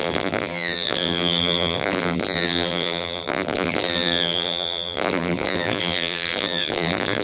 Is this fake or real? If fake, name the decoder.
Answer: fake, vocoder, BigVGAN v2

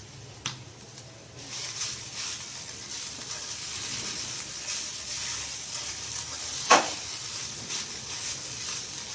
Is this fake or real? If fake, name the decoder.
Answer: fake, vocoder, BigVGAN v2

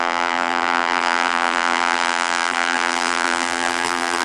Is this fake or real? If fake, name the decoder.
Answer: fake, vocoder, BigVGAN v2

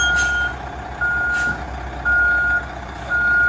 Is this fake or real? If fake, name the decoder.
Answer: real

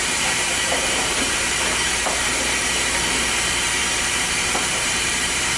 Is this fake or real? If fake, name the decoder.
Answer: fake, vocoder, BigVGAN v2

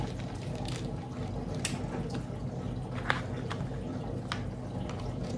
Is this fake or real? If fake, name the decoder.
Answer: real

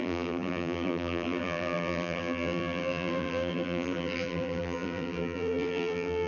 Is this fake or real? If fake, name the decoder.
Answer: fake, vocoder, BigVGAN v2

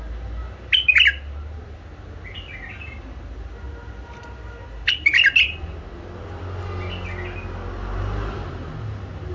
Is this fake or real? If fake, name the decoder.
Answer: real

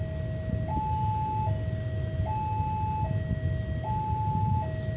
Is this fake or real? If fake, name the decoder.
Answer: real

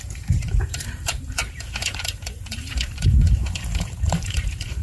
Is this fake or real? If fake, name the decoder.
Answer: fake, vocoder, BigVGAN v2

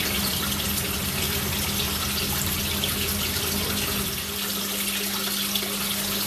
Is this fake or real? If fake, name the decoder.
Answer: real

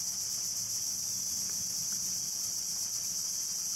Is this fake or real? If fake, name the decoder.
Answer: real